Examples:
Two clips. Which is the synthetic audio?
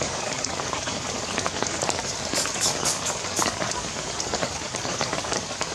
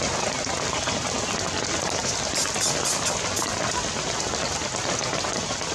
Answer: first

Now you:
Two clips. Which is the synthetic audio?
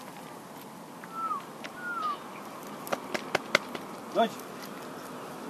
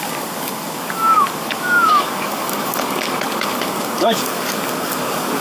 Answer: second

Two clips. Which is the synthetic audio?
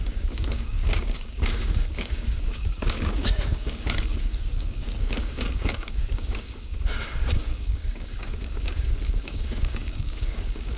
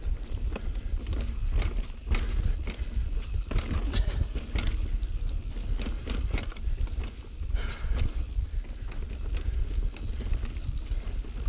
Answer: first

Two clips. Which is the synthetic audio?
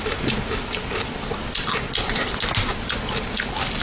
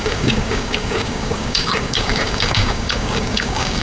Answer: second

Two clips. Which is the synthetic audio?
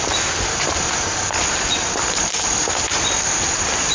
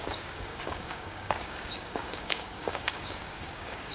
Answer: second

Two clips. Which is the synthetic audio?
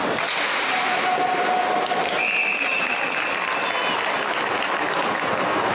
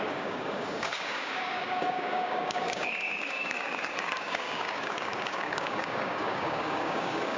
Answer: second